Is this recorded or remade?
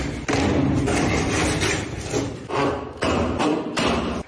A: recorded